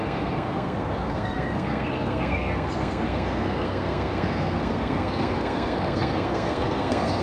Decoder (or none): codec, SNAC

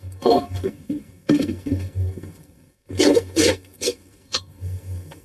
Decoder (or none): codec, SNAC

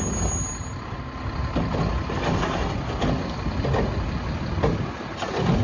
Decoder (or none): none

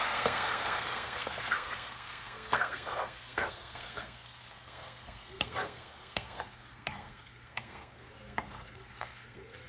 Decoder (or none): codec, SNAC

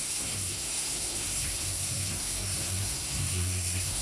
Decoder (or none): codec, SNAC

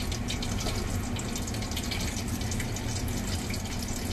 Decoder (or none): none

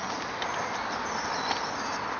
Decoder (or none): none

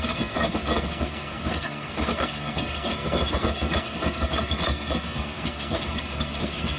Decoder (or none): codec, SNAC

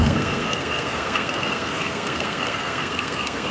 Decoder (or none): codec, SNAC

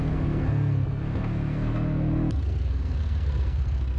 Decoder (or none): codec, SNAC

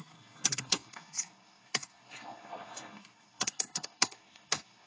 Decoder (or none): codec, SNAC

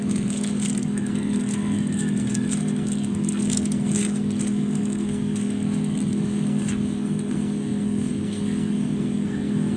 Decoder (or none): codec, SNAC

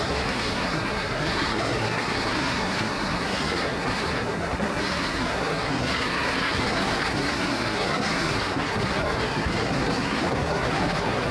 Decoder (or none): codec, SNAC